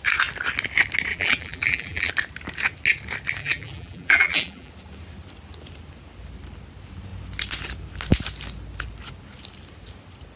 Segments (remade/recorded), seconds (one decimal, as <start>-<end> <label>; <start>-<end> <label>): 0.0-1.1 recorded; 1.1-2.1 remade; 2.1-3.4 recorded; 3.4-4.7 remade; 4.7-10.4 recorded